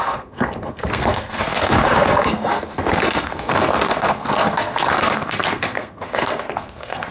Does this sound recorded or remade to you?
remade